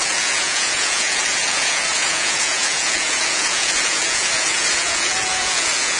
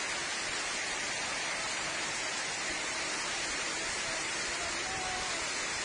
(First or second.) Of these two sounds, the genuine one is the second